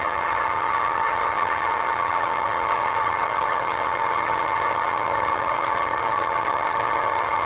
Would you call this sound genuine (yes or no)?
no